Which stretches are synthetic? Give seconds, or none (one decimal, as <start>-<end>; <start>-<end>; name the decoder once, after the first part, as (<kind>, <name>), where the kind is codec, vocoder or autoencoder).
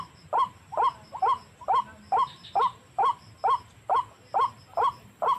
none